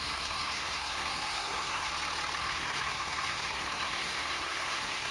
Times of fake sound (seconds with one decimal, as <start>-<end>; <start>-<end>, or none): 0.0-1.9; 2.4-5.1